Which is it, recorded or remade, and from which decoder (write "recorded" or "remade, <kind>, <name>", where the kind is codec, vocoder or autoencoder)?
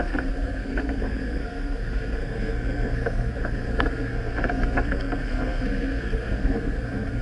remade, codec, SNAC